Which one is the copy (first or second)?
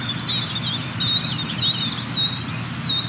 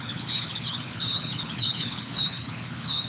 second